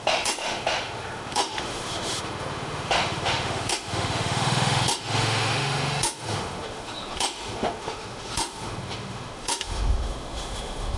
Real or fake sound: fake